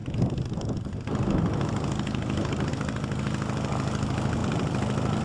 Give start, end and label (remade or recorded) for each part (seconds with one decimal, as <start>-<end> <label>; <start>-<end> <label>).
0.0-2.7 remade; 2.7-4.4 recorded; 4.4-5.2 remade